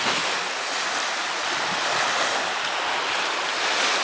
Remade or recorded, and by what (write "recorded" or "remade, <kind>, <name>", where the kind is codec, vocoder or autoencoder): recorded